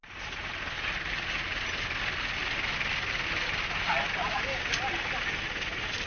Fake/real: real